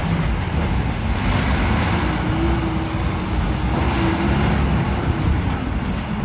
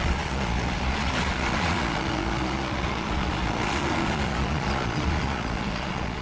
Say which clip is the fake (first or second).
second